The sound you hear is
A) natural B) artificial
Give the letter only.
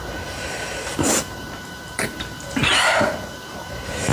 B